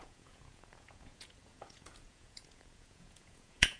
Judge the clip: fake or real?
fake